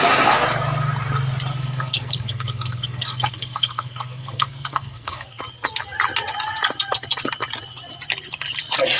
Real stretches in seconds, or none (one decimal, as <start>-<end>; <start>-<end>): 0.0-1.5; 5.4-9.0